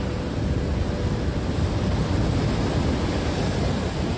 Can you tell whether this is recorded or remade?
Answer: recorded